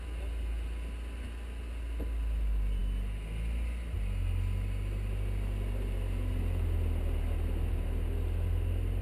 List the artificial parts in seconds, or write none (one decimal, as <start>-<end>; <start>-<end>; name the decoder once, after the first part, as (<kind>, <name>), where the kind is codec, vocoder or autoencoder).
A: none